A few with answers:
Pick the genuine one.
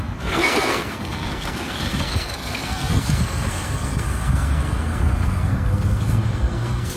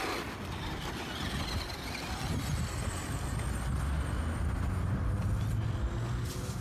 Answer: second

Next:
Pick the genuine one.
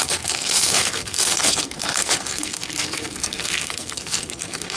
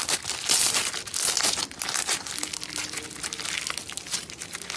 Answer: second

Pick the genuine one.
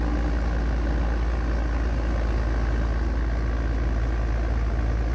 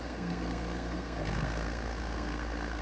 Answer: first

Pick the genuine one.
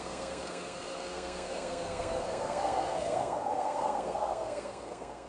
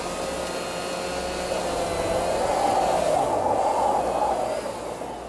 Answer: second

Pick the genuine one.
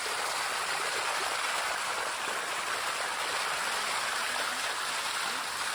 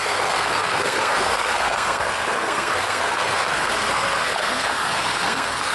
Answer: first